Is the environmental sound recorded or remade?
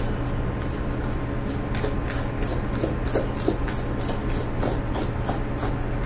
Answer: recorded